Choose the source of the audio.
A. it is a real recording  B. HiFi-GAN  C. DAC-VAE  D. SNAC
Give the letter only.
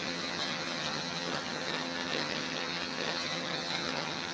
B